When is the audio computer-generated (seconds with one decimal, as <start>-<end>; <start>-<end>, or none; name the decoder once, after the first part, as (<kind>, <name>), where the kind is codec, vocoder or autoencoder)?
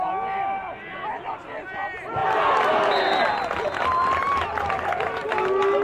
none